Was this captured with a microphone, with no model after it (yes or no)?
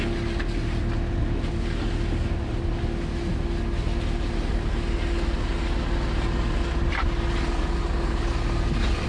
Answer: yes